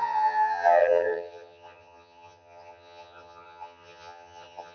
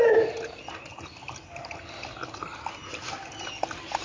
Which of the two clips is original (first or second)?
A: second